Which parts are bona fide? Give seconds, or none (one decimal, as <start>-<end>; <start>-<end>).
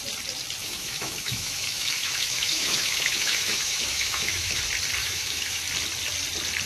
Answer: 0.0-0.6; 4.6-5.0; 5.6-6.7